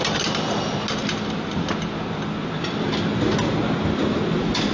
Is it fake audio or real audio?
real